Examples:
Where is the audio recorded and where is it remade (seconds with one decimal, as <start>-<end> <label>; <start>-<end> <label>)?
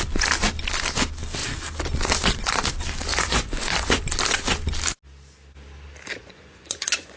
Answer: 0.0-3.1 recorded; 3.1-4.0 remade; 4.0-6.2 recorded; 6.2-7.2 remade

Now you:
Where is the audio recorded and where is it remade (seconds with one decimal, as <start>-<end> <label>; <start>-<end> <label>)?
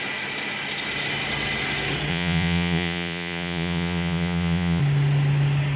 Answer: 0.0-2.1 recorded; 2.1-4.8 remade; 4.8-5.8 recorded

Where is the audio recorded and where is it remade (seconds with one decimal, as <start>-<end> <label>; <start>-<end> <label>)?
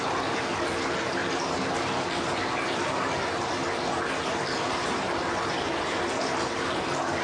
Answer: 0.0-7.2 recorded